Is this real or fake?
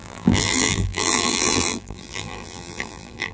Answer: fake